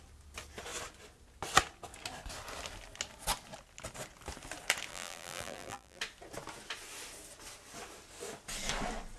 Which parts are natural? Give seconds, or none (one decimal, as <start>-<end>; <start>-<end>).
0.0-4.9; 6.0-9.2